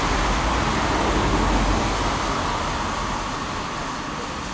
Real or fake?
real